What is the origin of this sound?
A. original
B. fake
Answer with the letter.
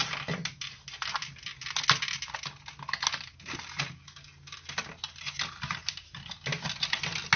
A